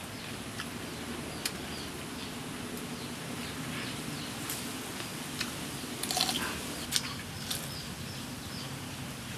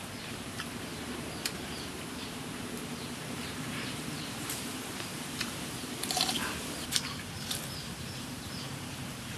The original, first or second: first